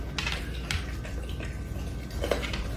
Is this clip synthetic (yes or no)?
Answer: no